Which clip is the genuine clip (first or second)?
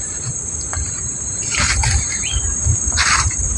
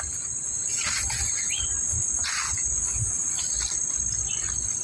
second